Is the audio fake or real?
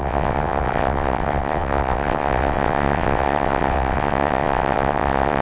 fake